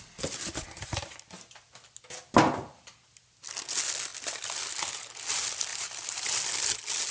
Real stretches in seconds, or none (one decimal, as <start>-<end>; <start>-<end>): 0.0-5.7; 6.4-7.1